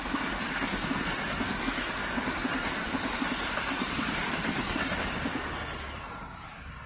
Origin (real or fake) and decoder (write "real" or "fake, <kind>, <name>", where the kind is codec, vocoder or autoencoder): real